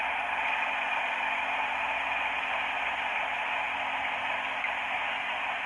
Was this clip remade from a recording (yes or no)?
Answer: no